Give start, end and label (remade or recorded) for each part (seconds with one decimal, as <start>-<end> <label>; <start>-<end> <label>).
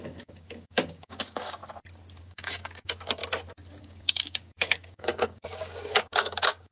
0.0-1.6 remade; 1.6-2.2 recorded; 2.2-3.2 remade; 3.2-3.8 recorded; 3.8-6.7 remade